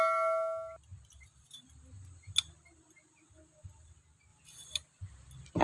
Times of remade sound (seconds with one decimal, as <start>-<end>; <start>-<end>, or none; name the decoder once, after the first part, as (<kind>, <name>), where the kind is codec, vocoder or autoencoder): none